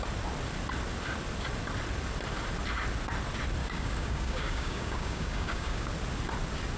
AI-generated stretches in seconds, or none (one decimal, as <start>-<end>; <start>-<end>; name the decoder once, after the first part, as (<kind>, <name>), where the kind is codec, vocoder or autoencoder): 3.6-5.9 (codec, DAC)